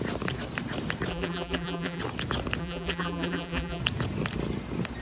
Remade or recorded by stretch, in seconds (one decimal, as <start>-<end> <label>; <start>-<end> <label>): 0.0-1.1 recorded; 1.1-2.0 remade; 2.0-2.6 recorded; 2.6-3.8 remade; 3.8-5.0 recorded